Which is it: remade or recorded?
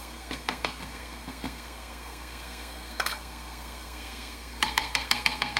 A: remade